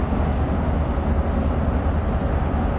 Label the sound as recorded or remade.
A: recorded